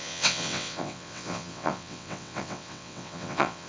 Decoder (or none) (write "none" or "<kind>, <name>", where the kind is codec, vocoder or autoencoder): vocoder, WaveNeXt